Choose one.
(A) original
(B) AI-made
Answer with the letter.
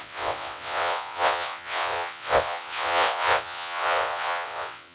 B